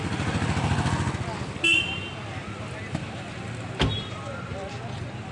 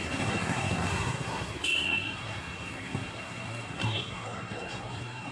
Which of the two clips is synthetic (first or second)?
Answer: second